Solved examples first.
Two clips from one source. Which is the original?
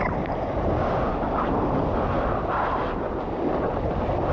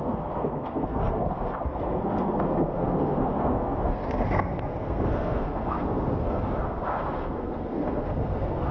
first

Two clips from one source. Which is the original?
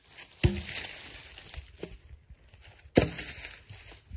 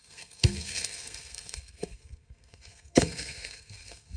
first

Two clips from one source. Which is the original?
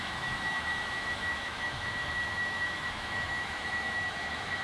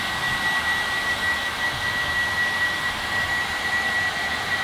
second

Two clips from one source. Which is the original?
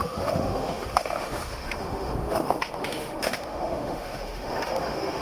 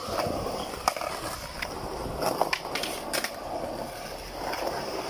second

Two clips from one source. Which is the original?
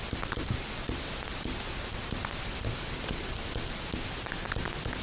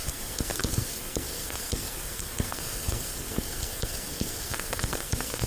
first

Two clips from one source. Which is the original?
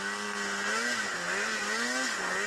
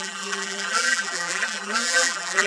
first